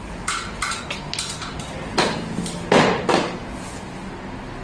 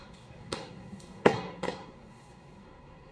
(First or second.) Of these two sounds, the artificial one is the second